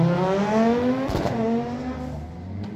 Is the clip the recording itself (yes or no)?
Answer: yes